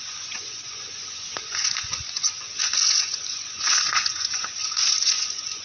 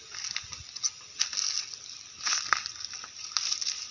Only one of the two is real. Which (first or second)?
second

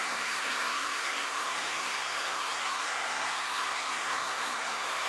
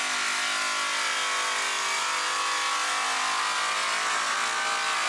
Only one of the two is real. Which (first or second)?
second